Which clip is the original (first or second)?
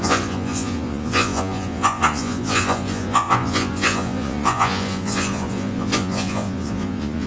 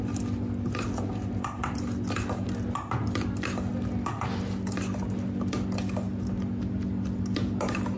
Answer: second